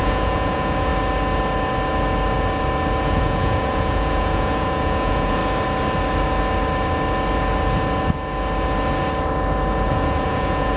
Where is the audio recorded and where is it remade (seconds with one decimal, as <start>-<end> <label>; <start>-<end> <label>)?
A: 0.0-0.9 remade; 0.9-3.0 recorded; 3.0-5.4 remade; 5.4-9.9 recorded; 9.9-10.8 remade

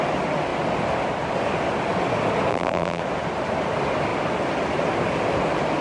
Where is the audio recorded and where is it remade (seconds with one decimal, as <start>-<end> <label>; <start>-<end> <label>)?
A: 0.0-2.5 recorded; 2.5-3.0 remade; 3.0-5.8 recorded

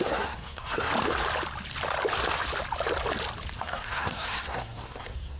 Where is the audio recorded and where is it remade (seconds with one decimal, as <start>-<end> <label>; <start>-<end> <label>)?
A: 0.0-0.9 remade; 0.9-3.6 recorded; 3.6-5.4 remade

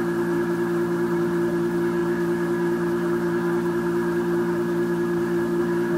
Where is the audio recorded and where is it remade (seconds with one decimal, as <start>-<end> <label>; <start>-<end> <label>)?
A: 0.0-6.0 recorded

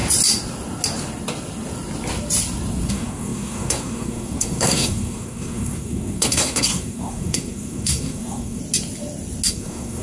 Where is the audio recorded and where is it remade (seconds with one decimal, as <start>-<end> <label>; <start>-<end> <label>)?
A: 0.0-2.9 recorded; 2.9-8.6 remade; 8.6-9.5 recorded; 9.5-10.0 remade